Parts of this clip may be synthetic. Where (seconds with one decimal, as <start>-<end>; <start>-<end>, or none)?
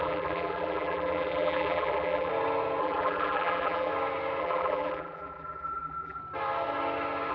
0.0-2.3; 2.8-3.9; 4.4-6.2